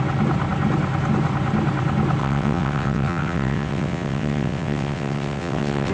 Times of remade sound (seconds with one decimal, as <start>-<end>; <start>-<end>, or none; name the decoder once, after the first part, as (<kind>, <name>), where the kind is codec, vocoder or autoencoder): 2.2-5.9 (vocoder, WaveNeXt)